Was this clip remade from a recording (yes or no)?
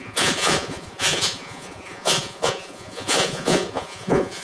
yes